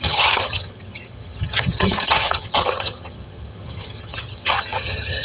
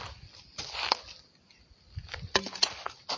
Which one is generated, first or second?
first